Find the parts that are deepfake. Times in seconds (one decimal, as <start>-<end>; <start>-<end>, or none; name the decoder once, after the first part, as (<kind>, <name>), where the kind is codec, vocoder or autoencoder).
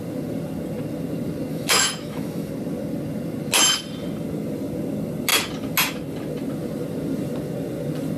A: 1.5-2.5 (autoencoder, DAC-VAE)